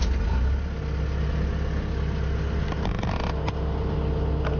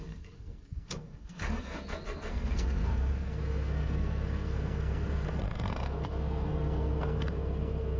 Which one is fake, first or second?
second